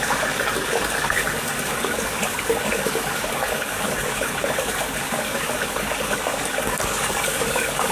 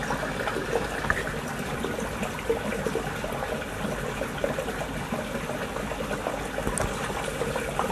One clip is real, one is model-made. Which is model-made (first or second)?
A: first